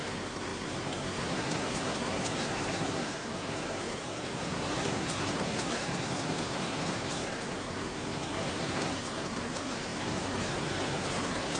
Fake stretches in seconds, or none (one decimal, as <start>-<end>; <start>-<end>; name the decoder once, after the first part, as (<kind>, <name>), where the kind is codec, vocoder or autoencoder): 0.0-11.6 (codec, SNAC)